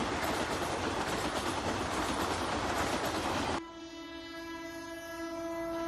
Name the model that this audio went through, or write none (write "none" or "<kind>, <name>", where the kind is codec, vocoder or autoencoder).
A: none